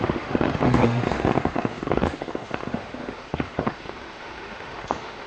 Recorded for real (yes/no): no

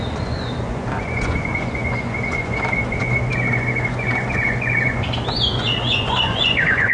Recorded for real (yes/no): no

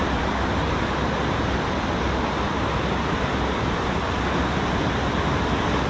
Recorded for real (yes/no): yes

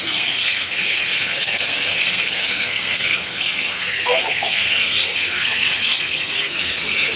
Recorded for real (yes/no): no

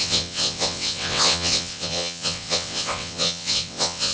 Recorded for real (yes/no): no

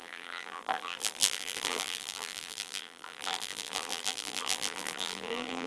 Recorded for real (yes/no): no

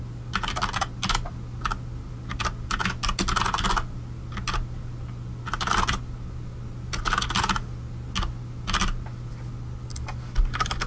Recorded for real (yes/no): yes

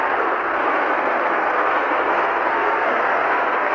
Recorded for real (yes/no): no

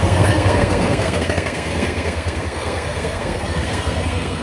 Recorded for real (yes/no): no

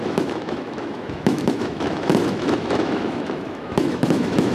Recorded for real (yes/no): no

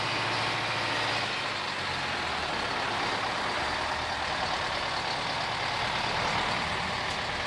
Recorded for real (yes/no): yes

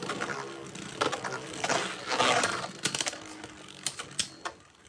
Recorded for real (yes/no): yes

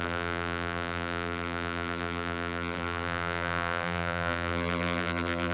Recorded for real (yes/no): no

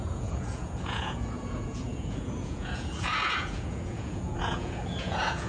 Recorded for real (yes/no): no